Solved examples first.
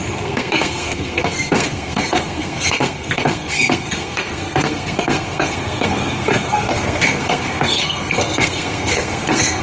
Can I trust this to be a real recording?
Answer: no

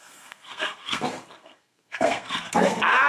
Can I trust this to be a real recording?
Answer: no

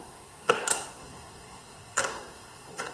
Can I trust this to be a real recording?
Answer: no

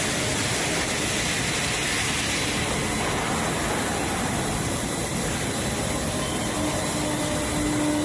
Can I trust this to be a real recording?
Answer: yes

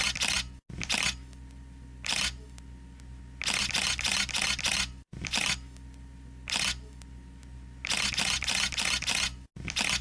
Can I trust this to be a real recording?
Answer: yes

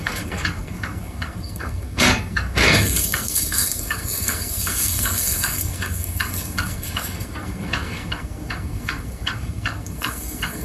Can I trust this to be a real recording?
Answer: no